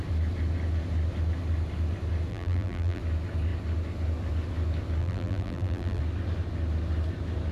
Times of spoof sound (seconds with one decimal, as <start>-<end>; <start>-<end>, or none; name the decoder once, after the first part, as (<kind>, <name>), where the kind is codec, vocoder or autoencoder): 2.3-3.0 (vocoder, BigVGAN v2); 5.0-6.0